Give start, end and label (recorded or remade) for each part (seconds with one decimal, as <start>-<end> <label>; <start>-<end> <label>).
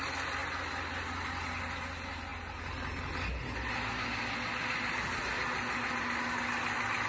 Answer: 0.0-7.1 recorded